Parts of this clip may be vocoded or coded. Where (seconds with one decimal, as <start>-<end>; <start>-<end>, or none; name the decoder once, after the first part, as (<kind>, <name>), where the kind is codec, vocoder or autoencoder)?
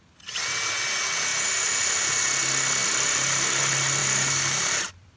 2.8-3.6 (vocoder, BigVGAN v2); 4.0-5.2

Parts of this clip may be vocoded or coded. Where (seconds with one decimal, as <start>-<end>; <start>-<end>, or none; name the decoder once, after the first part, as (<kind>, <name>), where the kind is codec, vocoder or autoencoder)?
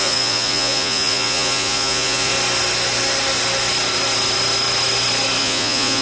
0.0-2.3 (vocoder, Vocos); 5.4-6.0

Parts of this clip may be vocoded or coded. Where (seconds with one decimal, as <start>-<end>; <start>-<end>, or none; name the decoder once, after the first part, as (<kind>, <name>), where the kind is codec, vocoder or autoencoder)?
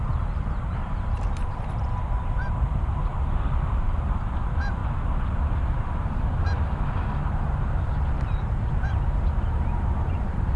0.0-3.1 (vocoder, BigVGAN v2); 3.8-4.8; 7.1-10.6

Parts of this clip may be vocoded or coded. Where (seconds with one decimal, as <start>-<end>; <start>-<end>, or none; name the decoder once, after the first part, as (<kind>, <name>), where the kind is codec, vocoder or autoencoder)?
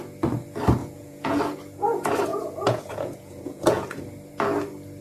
0.8-1.4 (vocoder, Vocos); 2.3-4.0